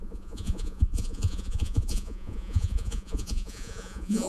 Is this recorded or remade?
remade